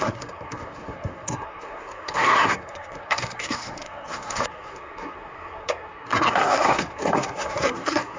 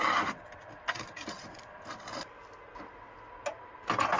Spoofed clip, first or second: first